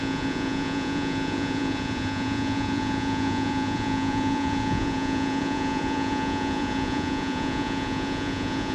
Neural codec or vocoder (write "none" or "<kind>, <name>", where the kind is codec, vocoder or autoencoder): vocoder, Vocos